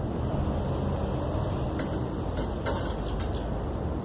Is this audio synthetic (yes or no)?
yes